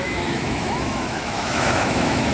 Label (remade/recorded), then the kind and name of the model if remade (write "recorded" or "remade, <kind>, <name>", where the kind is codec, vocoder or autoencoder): remade, autoencoder, DAC-VAE